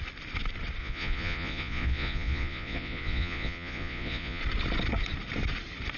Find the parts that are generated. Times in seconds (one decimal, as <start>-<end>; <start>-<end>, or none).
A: 0.8-4.4